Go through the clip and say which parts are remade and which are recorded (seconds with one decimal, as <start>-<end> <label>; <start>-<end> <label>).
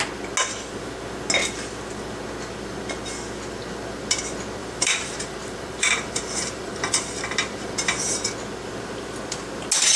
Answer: 0.0-4.6 recorded; 4.6-7.7 remade; 7.7-10.0 recorded